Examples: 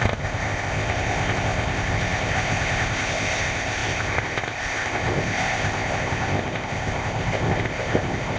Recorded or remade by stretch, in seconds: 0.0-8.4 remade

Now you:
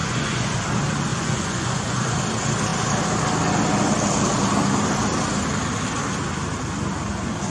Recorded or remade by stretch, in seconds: 0.0-0.6 remade; 0.6-1.1 recorded; 1.1-2.2 remade; 2.2-7.5 recorded